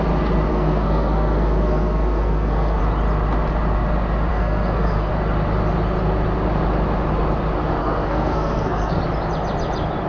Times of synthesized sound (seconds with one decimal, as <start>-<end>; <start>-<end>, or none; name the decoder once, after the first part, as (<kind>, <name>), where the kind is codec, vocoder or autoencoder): 0.5-2.8 (codec, SNAC); 4.3-5.1; 7.8-9.0